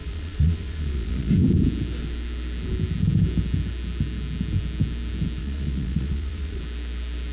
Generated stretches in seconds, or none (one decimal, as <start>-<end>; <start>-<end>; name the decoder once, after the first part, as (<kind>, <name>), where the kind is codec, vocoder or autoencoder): 0.0-1.3 (vocoder, Vocos); 5.4-6.6